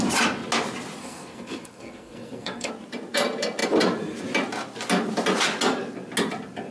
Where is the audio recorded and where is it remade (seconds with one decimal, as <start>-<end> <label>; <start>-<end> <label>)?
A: 0.0-1.0 recorded; 1.0-2.7 remade; 2.7-6.7 recorded